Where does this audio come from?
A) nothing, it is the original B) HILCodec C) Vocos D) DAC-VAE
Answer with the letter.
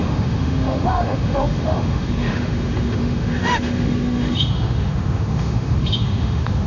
D